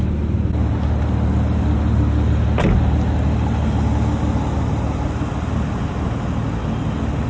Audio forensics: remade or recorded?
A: recorded